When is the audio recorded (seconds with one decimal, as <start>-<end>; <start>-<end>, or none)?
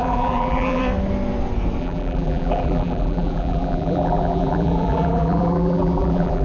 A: 0.8-1.8